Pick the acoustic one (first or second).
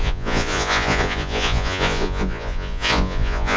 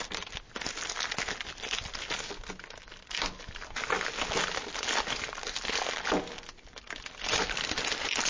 second